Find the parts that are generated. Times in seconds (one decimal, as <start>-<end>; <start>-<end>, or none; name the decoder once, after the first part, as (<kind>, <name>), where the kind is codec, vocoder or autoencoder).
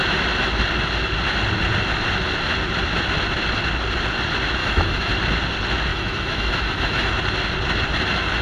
4.6-5.1 (autoencoder, DAC-VAE); 5.9-7.1